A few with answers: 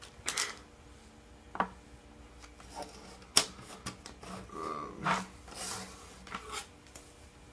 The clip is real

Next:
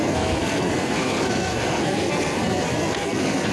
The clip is fake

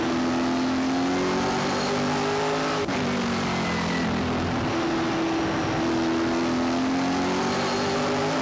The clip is real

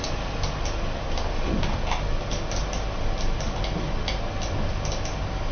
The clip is real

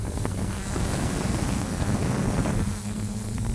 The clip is fake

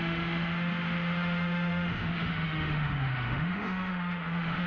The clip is fake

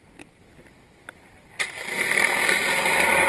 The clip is real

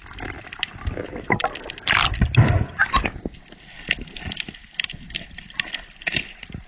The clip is real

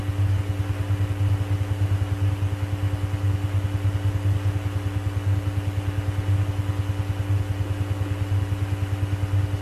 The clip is real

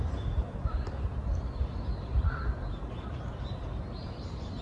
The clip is fake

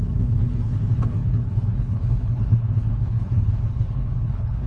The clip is fake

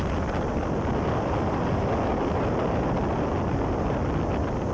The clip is real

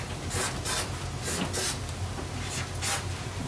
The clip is real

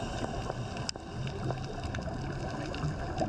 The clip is real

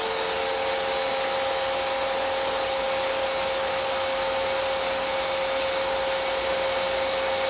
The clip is real